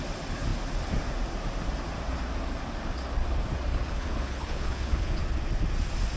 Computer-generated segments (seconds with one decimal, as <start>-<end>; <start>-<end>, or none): 3.7-5.2